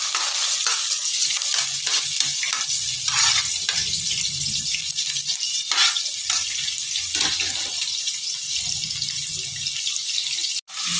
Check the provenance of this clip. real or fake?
real